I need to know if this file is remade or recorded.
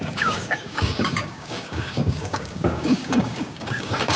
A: remade